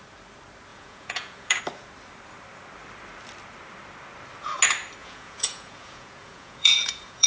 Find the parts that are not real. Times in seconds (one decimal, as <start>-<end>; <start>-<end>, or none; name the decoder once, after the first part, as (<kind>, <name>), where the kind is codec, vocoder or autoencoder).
0.7-1.6 (vocoder, Vocos); 5.0-7.3